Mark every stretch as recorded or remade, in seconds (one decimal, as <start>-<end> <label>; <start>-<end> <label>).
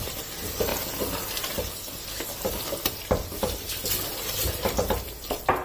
0.0-0.7 remade; 0.7-2.5 recorded; 2.5-3.8 remade; 3.8-4.3 recorded; 4.3-5.6 remade